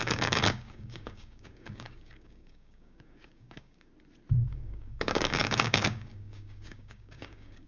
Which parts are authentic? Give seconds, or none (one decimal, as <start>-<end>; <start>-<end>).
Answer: 3.9-4.4